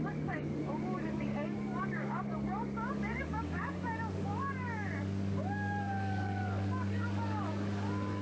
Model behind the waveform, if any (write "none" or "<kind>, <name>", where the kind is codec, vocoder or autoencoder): codec, DAC